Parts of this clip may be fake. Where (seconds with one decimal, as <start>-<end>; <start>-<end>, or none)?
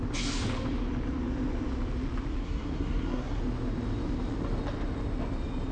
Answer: 2.4-3.4